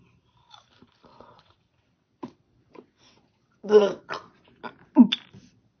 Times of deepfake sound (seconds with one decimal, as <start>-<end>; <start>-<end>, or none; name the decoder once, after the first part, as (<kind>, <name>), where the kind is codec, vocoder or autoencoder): 1.1-4.0 (vocoder, WaveNeXt)

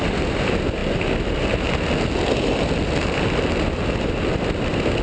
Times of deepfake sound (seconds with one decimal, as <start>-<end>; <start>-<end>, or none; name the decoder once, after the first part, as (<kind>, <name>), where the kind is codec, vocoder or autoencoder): none

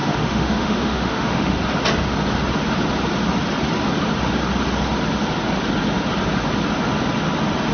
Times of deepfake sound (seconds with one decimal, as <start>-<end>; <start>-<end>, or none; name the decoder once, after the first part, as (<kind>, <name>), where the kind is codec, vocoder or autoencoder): 0.0-1.6 (autoencoder, DAC-VAE)

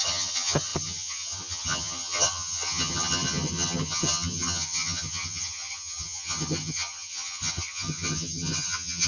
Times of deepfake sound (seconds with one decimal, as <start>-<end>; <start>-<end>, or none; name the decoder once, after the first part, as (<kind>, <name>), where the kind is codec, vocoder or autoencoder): 0.0-9.1 (vocoder, HiFi-GAN)

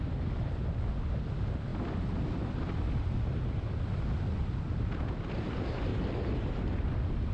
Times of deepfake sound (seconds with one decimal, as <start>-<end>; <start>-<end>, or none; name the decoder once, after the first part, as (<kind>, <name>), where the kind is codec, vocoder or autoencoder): 5.9-6.7 (vocoder, BigVGAN v2)